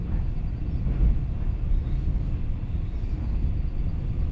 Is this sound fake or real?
real